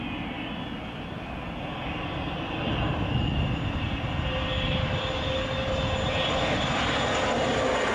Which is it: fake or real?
real